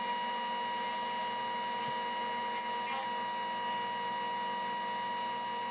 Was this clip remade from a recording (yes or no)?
no